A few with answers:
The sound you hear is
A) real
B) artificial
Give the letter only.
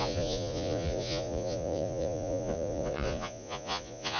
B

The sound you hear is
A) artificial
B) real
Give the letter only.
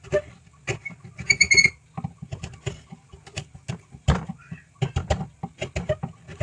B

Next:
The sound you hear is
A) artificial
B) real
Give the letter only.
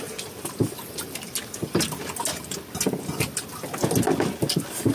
B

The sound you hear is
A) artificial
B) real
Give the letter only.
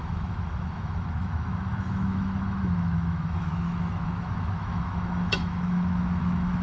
A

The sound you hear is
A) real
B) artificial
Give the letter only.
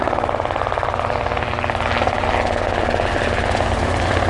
A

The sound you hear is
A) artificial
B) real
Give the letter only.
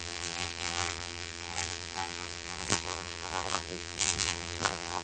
A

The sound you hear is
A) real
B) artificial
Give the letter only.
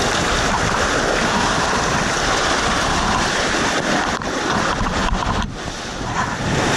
B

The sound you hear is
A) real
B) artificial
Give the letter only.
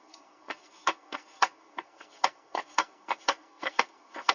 B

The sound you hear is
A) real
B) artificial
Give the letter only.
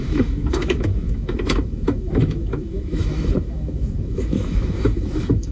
B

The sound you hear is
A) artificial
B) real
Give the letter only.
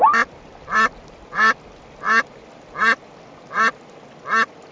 B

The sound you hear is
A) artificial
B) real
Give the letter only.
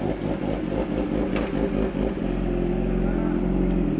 B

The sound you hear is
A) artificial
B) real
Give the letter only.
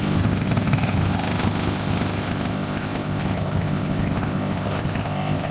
A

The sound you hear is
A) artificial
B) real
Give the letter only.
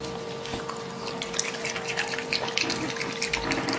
B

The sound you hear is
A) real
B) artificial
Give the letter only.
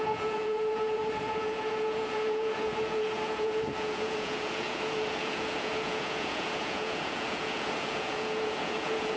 B